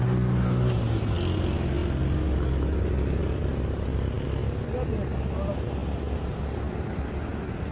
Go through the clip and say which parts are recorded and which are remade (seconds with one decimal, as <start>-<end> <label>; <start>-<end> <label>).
0.0-7.7 recorded